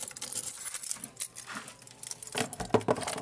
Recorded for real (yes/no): yes